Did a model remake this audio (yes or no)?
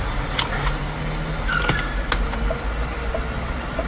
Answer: no